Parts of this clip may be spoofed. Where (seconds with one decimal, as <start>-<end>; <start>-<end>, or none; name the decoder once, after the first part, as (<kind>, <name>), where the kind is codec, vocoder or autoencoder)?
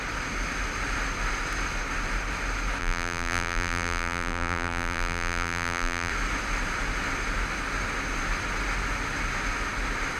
2.8-6.1 (vocoder, BigVGAN v2)